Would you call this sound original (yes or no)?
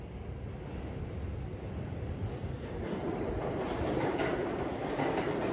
yes